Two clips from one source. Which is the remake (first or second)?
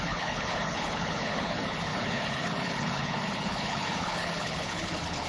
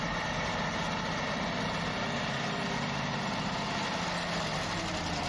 first